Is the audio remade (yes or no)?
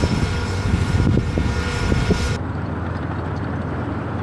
yes